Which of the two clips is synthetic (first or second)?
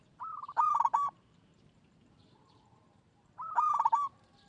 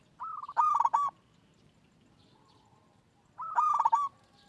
first